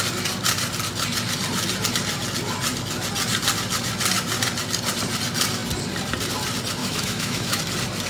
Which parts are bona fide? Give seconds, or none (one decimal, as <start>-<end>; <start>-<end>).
0.0-6.8; 7.6-8.1